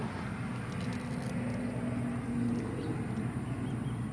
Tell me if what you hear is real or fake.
real